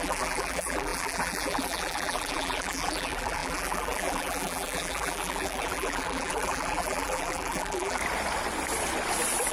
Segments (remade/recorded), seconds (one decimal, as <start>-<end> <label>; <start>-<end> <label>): 0.0-8.0 remade; 8.0-9.5 recorded